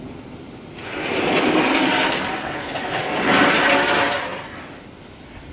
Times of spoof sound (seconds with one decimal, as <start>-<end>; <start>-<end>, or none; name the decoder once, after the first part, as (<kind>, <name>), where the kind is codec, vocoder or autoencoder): 2.4-3.0 (codec, HILCodec)